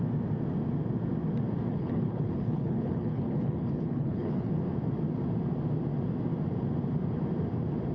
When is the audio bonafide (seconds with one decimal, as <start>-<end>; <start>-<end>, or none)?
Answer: 0.0-1.7; 4.6-7.9